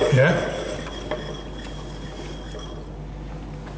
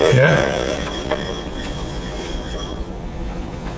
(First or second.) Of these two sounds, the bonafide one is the first